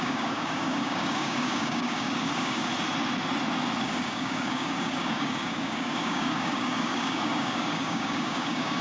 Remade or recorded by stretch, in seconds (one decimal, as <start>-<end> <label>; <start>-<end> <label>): 0.0-2.7 remade; 2.7-3.8 recorded; 3.8-8.8 remade